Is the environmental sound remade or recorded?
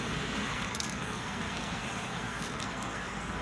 remade